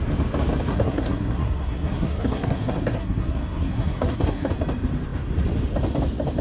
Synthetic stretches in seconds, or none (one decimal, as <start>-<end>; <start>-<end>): 0.7-4.5